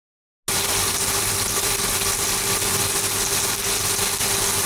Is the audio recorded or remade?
recorded